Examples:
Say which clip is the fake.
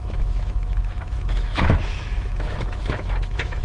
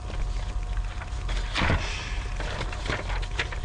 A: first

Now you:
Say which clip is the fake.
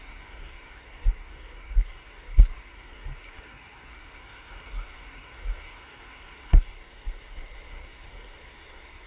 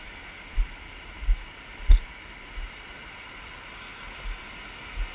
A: first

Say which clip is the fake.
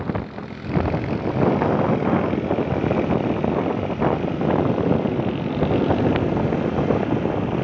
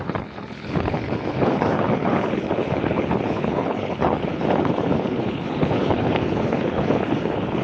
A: second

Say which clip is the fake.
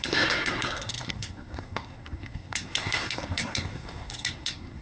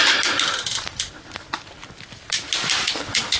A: first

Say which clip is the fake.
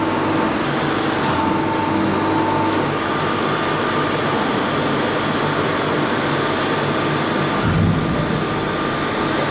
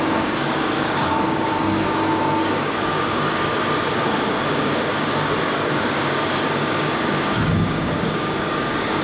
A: second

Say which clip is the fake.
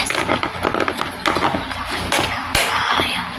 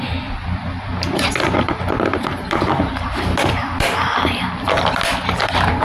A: second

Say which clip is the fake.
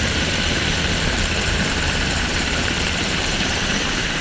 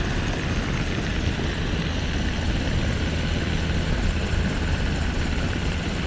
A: first